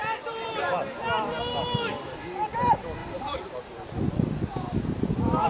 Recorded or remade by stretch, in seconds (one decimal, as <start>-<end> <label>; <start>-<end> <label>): 0.0-0.7 remade; 0.7-3.0 recorded; 3.0-5.5 remade